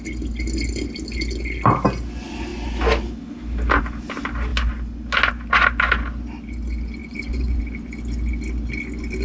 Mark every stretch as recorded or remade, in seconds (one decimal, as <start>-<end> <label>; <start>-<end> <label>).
0.0-7.0 recorded; 7.0-7.6 remade; 7.6-9.2 recorded